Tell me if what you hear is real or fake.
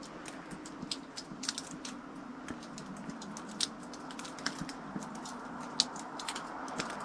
real